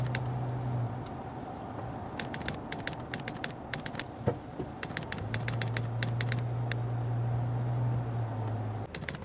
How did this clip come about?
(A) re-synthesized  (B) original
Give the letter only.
B